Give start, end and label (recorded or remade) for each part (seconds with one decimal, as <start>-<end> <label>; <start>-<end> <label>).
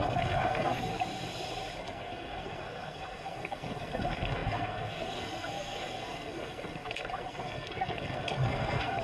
0.0-0.9 remade; 0.9-1.8 recorded; 1.8-9.0 remade